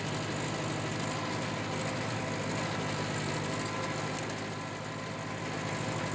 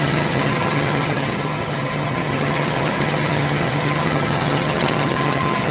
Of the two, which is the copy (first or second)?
second